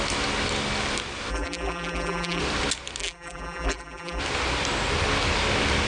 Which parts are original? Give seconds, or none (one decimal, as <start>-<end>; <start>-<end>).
0.0-1.3; 2.4-3.0; 4.2-5.9